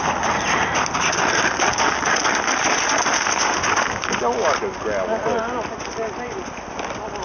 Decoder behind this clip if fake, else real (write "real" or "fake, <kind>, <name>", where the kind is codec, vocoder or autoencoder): real